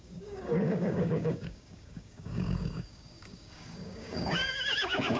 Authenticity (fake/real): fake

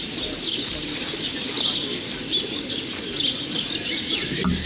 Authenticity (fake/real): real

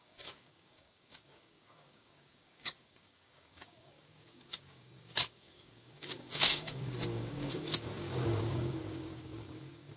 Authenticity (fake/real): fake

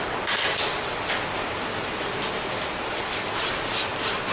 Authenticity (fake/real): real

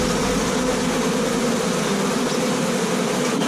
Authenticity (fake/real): real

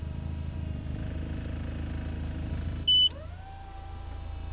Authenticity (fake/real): real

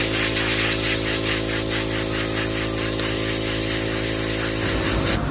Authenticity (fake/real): real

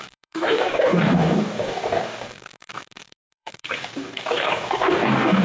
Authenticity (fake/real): fake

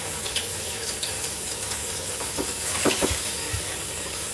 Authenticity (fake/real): fake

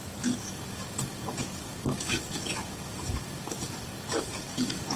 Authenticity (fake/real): fake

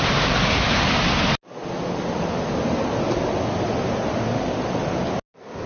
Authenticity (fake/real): real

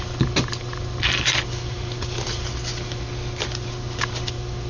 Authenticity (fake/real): real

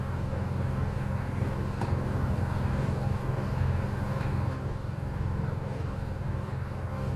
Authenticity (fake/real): fake